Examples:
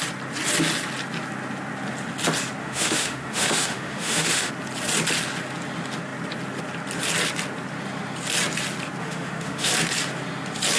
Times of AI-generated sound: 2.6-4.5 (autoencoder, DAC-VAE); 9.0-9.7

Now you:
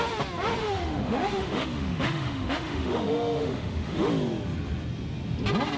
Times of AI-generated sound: 0.6-4.1 (autoencoder, DAC-VAE)

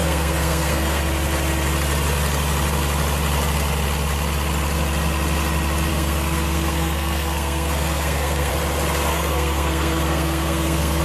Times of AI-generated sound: 0.0-1.0 (codec, SNAC); 5.9-8.5; 9.1-11.0

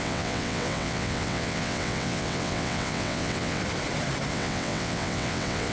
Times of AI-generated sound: 0.0-3.6 (vocoder, WaveNeXt); 4.3-5.7

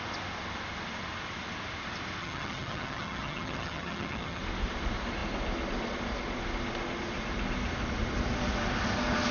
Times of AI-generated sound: 2.2-4.4 (vocoder, HiFi-GAN)

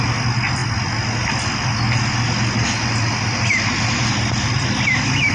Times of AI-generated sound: none

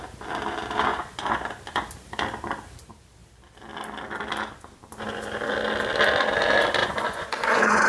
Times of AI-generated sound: 0.9-1.6 (vocoder, Vocos); 6.8-7.9

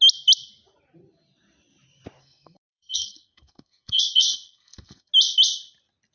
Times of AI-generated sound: 2.2-5.1 (codec, SNAC)